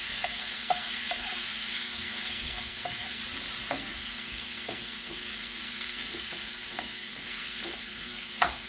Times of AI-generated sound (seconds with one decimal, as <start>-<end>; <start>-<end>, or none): 0.0-3.2; 3.7-8.7